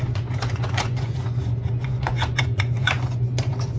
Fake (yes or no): yes